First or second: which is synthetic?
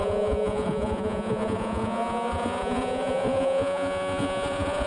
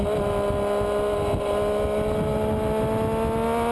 first